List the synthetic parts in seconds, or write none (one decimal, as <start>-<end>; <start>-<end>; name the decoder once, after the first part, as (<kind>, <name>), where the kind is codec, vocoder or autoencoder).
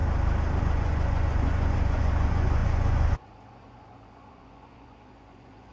0.6-5.7 (vocoder, Vocos)